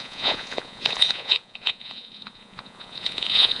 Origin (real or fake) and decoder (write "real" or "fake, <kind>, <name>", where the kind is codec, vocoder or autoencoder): fake, vocoder, Vocos